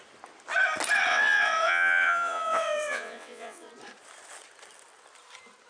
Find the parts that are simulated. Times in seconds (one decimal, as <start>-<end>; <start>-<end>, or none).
1.1-3.7

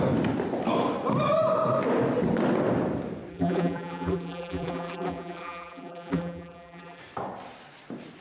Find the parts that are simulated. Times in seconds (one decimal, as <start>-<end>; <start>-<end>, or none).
3.3-7.0

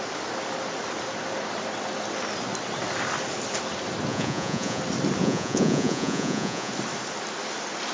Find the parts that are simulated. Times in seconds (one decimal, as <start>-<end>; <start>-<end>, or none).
4.1-4.8; 5.2-6.7

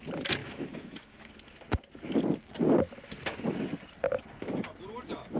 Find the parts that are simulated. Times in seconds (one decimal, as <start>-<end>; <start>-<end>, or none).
0.4-1.3

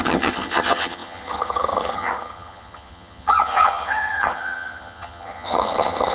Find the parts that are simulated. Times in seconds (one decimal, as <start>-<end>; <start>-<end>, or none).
0.0-6.1